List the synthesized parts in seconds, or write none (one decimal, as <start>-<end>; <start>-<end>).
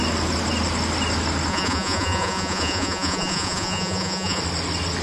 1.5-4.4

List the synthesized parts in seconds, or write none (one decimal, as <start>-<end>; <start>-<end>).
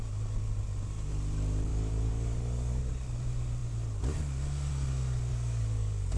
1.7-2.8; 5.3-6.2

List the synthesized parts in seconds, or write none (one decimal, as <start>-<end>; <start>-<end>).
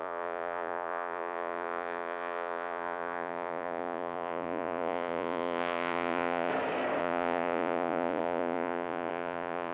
0.0-6.5; 7.0-9.7